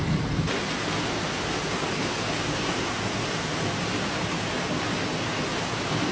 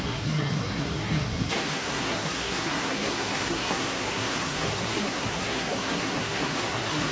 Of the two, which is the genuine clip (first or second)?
first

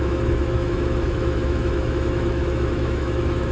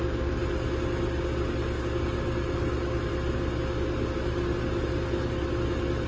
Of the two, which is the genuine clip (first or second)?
second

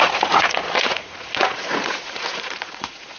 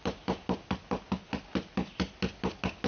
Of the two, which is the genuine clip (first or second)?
second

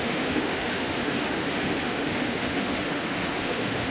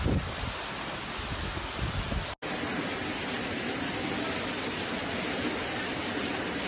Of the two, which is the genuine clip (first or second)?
second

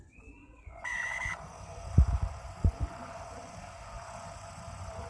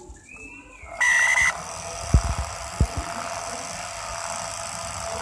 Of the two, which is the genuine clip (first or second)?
second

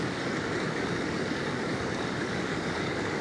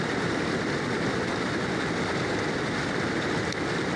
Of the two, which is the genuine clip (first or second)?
second